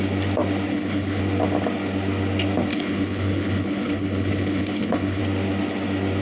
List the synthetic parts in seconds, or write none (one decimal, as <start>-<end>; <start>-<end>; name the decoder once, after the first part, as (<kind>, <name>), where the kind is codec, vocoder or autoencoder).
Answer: 0.7-1.2 (codec, HILCodec); 2.7-5.2